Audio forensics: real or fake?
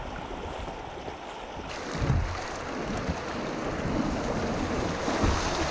real